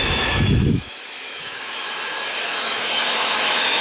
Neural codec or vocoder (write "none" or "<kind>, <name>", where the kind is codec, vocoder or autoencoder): autoencoder, DAC-VAE